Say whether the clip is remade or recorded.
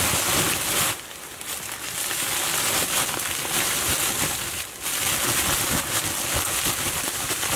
recorded